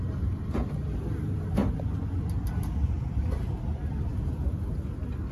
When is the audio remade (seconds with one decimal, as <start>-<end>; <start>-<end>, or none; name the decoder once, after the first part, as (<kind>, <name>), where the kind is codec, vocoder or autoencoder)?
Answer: 4.1-4.7 (vocoder, Vocos)